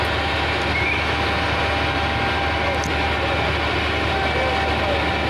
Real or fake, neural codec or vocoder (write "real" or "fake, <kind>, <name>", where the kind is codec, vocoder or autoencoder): real